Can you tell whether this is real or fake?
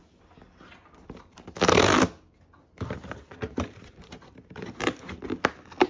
real